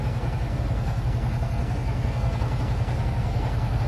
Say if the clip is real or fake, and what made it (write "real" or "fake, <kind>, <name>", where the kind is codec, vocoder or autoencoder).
fake, codec, SNAC